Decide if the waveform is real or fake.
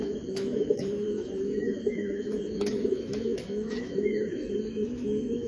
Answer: fake